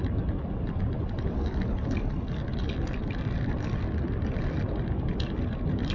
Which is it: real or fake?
fake